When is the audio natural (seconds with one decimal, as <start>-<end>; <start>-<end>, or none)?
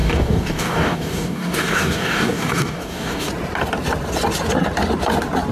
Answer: 3.3-5.5